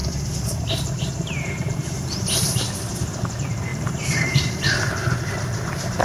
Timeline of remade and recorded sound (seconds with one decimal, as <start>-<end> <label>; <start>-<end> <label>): 0.0-2.5 remade; 2.5-3.7 recorded; 3.7-4.6 remade; 4.6-6.0 recorded